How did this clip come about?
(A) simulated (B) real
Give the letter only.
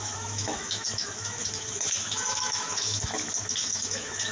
A